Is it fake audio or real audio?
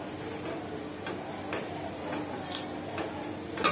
real